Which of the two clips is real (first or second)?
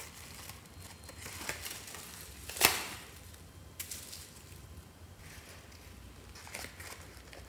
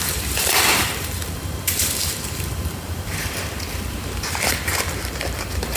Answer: first